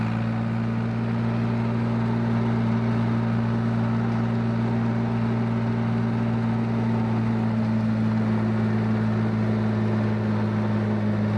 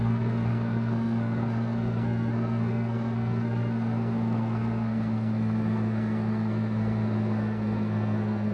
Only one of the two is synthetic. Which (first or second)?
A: second